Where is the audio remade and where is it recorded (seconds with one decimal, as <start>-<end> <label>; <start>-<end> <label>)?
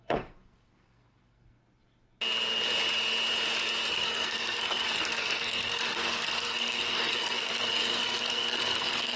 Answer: 0.0-1.6 remade; 1.6-3.9 recorded; 3.9-9.2 remade